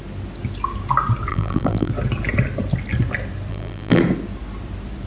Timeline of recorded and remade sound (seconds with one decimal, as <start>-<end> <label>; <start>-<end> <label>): 0.0-1.3 recorded; 1.3-1.9 remade; 1.9-3.5 recorded; 3.5-4.0 remade; 4.0-5.1 recorded